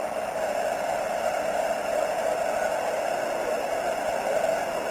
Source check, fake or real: real